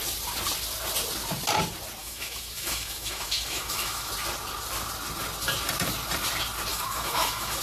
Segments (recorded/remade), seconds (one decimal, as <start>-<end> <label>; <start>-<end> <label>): 0.0-2.0 recorded; 2.0-4.1 remade; 4.1-6.7 recorded; 6.7-7.6 remade